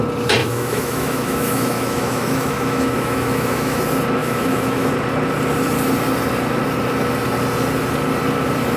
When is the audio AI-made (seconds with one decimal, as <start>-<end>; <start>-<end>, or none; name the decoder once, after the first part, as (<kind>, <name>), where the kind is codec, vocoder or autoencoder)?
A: 0.4-3.8 (autoencoder, DAC-VAE); 4.2-4.9